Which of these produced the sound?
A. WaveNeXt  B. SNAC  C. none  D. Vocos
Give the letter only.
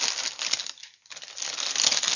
C